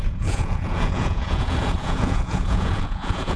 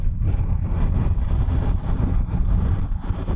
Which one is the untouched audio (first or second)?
second